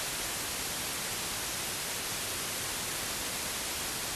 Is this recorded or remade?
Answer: recorded